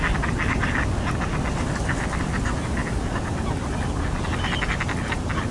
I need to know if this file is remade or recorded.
recorded